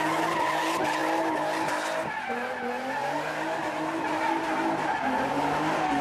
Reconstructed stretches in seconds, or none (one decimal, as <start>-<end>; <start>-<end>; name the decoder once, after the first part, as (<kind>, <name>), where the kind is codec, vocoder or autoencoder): none